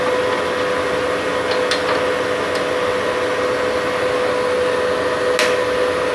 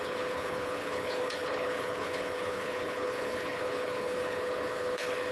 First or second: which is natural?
first